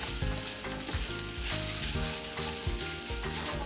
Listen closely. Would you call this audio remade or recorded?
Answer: recorded